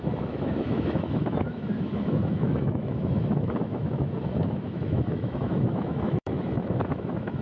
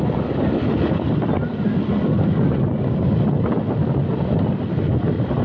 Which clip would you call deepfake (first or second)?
first